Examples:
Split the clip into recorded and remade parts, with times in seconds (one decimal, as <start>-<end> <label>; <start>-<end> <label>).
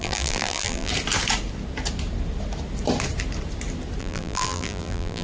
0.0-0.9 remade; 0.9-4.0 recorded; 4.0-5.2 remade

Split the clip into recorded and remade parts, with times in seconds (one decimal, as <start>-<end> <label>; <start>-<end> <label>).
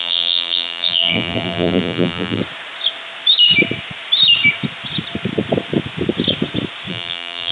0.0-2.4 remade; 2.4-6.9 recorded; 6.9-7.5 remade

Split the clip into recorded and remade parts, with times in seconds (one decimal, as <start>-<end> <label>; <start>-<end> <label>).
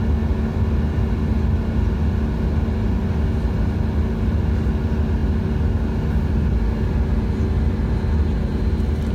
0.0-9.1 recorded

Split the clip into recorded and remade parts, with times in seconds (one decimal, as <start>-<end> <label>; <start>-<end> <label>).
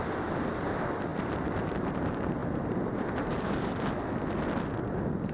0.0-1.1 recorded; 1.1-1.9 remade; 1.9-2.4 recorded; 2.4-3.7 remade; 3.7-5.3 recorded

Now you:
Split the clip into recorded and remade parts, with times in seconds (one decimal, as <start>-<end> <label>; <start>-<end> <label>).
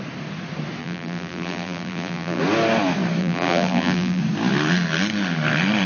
0.0-0.8 recorded; 0.8-2.4 remade; 2.4-3.2 recorded; 3.2-4.2 remade; 4.2-5.9 recorded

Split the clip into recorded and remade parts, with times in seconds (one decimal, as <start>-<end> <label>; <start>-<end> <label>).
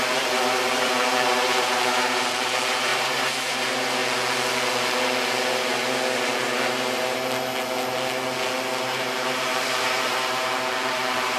0.0-4.0 remade; 4.0-8.9 recorded; 8.9-9.5 remade; 9.5-10.1 recorded; 10.1-11.4 remade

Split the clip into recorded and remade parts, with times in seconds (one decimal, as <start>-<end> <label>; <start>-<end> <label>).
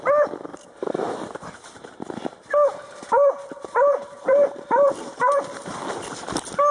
0.0-0.5 recorded; 0.5-4.5 remade; 4.5-6.7 recorded